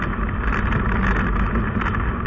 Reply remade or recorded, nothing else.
recorded